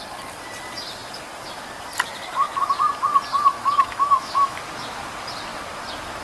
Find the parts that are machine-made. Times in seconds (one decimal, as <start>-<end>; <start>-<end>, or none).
3.5-4.6